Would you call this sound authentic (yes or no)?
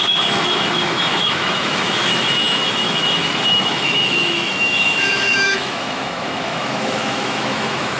no